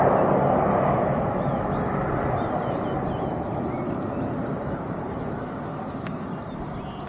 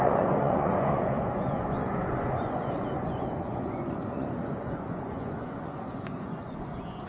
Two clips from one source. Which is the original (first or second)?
first